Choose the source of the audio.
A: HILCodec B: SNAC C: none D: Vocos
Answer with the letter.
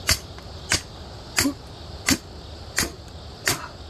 C